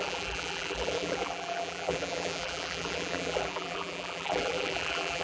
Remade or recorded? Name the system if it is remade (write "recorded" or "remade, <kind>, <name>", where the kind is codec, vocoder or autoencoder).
remade, vocoder, BigVGAN v2